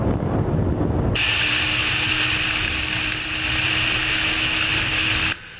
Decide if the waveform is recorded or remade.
recorded